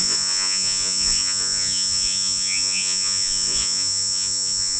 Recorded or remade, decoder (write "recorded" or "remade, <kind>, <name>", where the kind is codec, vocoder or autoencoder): remade, vocoder, Vocos